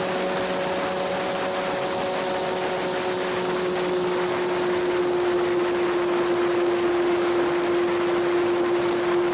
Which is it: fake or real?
real